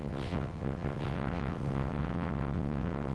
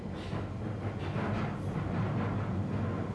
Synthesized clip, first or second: first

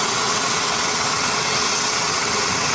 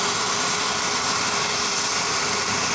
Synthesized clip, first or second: first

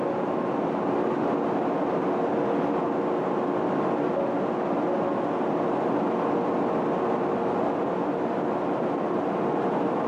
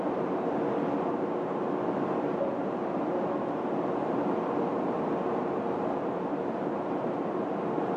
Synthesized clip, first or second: second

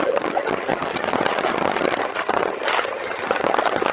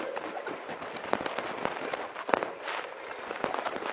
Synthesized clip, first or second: first